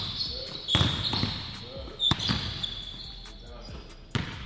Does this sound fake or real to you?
real